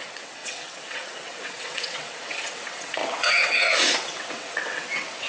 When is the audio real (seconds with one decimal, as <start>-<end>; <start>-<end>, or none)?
none